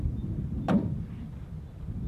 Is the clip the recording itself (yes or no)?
yes